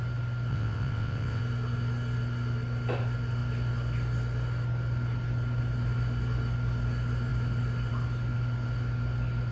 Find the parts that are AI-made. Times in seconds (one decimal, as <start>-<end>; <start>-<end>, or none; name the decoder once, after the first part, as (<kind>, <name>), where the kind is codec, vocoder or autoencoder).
0.5-1.4 (vocoder, WaveNeXt)